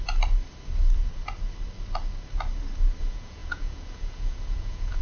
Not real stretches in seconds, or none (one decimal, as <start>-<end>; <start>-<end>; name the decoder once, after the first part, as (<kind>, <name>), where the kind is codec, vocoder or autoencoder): 3.0-5.0 (vocoder, Vocos)